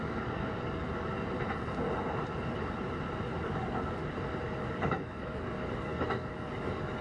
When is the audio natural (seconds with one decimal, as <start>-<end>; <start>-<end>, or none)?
0.9-3.4; 4.0-4.6